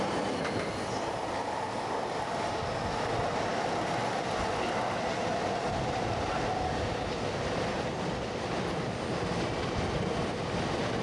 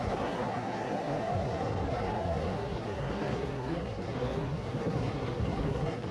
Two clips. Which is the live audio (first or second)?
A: first